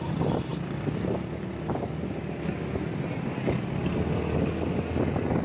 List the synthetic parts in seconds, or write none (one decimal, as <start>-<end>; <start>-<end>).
none